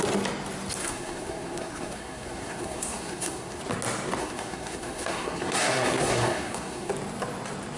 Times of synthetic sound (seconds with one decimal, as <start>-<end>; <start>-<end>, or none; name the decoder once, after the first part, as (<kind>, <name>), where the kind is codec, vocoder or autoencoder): 0.8-3.6 (codec, SNAC); 4.2-6.9